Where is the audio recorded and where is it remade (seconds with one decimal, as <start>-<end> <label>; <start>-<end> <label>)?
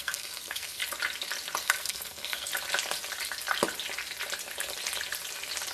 0.0-0.8 remade; 0.8-1.6 recorded; 1.6-2.5 remade; 2.5-5.7 recorded